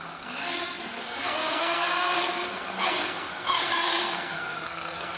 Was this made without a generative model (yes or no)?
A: no